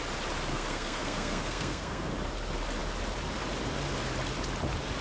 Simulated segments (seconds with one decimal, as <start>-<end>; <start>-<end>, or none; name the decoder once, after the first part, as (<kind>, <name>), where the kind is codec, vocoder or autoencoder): 0.5-2.1 (codec, SNAC)